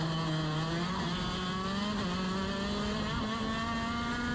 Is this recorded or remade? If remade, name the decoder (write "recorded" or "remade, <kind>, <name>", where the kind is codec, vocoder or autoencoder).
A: recorded